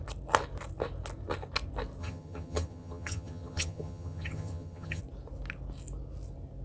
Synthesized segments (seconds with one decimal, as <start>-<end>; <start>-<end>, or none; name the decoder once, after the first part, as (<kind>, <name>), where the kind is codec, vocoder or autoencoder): 2.0-5.0 (vocoder, HiFi-GAN)